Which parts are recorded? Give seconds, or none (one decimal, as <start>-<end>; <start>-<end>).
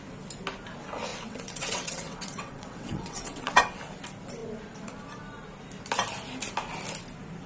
0.0-1.1; 3.8-7.5